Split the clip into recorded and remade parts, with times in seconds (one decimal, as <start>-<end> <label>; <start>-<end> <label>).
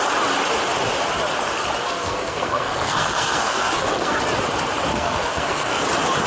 0.0-1.8 recorded; 1.8-4.2 remade; 4.2-4.9 recorded; 4.9-5.8 remade; 5.8-6.3 recorded